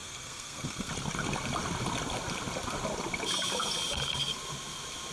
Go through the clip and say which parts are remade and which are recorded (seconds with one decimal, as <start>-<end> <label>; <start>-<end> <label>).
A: 0.0-0.9 remade; 0.9-5.1 recorded